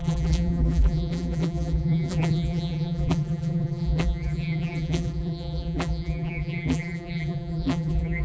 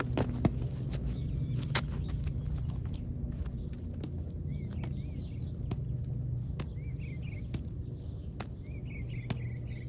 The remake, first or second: first